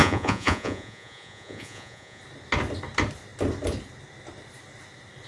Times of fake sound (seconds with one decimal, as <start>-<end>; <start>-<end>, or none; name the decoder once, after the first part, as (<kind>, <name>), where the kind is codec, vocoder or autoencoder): 0.0-2.2 (vocoder, Vocos)